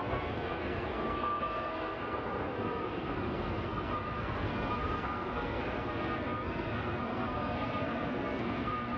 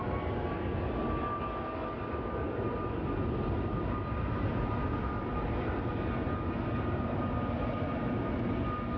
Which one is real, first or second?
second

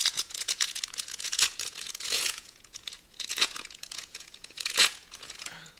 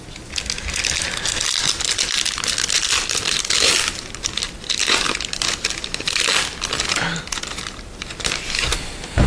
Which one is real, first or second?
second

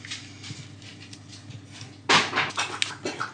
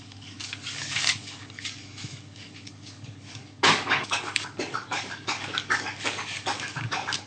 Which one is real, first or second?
first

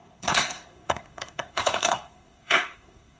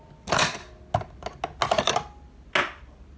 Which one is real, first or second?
second